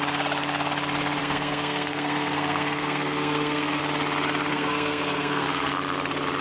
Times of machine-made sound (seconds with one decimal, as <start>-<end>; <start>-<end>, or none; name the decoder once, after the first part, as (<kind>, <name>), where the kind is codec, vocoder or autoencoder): 1.2-3.8 (codec, SNAC); 4.5-5.7